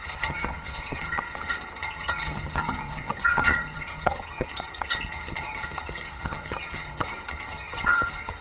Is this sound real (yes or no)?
no